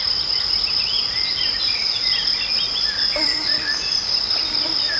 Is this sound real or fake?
fake